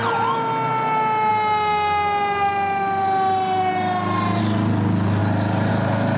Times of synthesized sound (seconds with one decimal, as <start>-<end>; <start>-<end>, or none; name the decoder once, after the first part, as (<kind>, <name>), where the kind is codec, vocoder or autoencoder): none